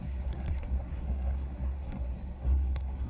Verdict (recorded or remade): remade